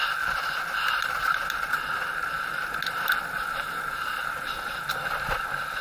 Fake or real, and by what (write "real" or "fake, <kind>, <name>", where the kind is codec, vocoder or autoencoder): real